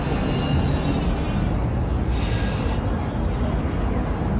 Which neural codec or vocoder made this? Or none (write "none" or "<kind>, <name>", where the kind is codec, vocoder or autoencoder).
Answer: none